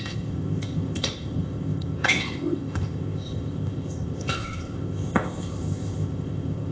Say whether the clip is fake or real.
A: fake